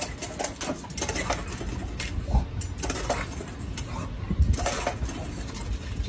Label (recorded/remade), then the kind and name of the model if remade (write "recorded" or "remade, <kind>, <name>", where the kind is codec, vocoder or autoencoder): recorded